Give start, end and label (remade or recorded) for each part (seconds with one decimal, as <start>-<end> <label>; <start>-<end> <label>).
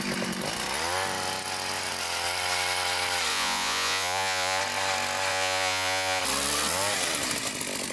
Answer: 0.0-3.3 recorded; 3.3-4.6 remade; 4.6-5.3 recorded; 5.3-6.2 remade; 6.2-7.9 recorded